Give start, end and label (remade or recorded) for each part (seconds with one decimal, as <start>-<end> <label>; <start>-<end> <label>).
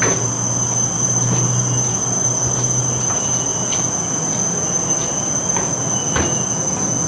0.0-7.1 recorded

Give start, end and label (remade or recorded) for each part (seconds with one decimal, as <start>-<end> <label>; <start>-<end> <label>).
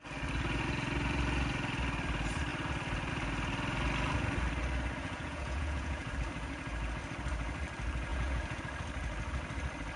0.0-5.0 recorded; 5.0-6.1 remade; 6.1-8.1 recorded; 8.1-8.6 remade; 8.6-10.0 recorded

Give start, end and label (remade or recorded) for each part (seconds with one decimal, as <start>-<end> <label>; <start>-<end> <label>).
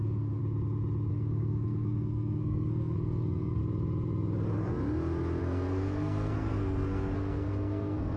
0.0-0.4 remade; 0.4-1.1 recorded; 1.1-3.6 remade; 3.6-5.4 recorded; 5.4-8.2 remade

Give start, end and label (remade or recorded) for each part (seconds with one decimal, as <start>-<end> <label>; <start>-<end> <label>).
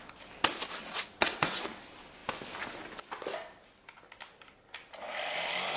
0.0-0.8 recorded; 0.8-1.6 remade; 1.6-5.8 recorded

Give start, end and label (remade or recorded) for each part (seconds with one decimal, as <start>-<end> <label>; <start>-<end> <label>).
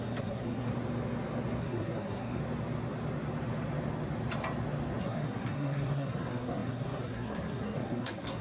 0.0-0.7 remade; 0.7-1.6 recorded; 1.6-2.4 remade; 2.4-5.0 recorded; 5.0-8.4 remade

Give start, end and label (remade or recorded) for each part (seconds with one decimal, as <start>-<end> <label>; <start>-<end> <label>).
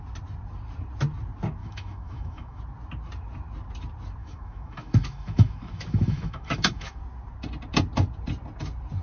0.0-1.6 recorded; 1.6-2.6 remade; 2.6-4.2 recorded; 4.2-7.0 remade; 7.0-9.0 recorded